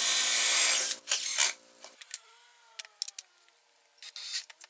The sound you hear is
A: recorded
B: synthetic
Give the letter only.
A